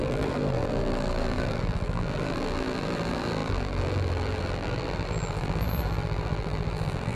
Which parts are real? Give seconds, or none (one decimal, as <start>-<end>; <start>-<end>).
none